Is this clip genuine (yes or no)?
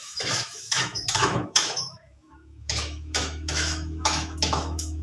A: no